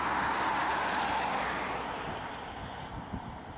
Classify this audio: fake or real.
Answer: real